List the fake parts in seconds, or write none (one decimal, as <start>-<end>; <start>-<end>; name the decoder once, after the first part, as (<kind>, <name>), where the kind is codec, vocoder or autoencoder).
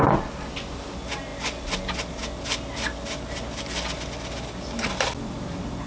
none